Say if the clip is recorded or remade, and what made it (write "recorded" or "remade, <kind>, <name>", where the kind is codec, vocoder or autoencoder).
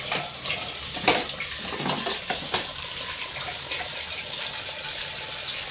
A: recorded